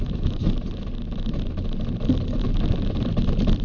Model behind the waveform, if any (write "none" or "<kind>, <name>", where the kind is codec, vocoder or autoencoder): none